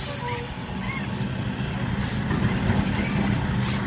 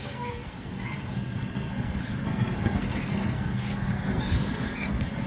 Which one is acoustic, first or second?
first